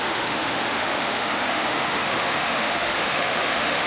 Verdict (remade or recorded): remade